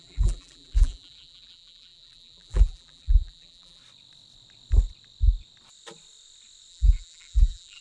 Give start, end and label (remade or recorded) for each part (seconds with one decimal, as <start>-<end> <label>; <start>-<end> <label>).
0.0-3.8 remade; 3.8-6.7 recorded; 6.7-7.8 remade